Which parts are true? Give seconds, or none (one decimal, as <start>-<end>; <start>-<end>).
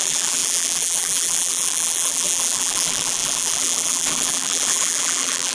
none